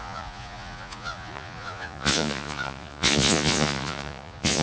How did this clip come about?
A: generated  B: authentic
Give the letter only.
A